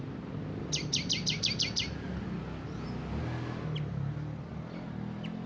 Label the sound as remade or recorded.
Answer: recorded